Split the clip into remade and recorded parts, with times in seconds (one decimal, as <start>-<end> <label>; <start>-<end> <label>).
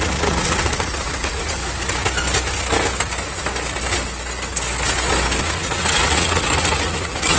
0.0-1.6 remade; 1.6-5.4 recorded; 5.4-7.4 remade